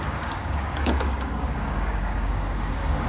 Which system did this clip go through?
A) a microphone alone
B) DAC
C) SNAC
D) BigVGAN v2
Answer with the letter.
B